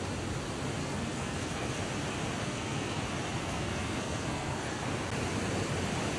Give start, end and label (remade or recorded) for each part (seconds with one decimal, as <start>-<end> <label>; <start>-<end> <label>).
0.0-0.8 recorded; 0.8-1.8 remade; 1.8-2.4 recorded; 2.4-3.0 remade; 3.0-3.4 recorded; 3.4-4.8 remade; 4.8-6.2 recorded